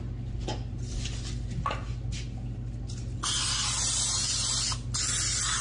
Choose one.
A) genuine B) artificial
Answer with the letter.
A